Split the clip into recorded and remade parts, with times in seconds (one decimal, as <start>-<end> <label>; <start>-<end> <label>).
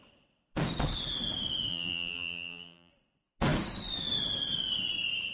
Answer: 0.0-1.7 recorded; 1.7-2.9 remade; 2.9-5.3 recorded